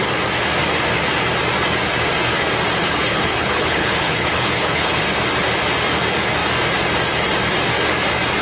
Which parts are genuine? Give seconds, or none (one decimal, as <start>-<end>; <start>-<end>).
0.0-2.8; 5.0-8.4